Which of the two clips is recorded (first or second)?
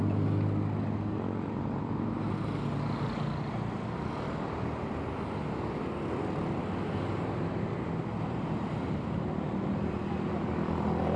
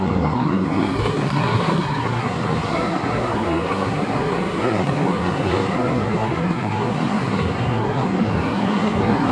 first